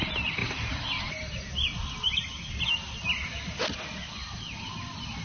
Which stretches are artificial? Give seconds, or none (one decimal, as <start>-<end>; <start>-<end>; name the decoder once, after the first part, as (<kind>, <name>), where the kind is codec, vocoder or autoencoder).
0.4-1.1 (vocoder, BigVGAN v2); 4.2-4.7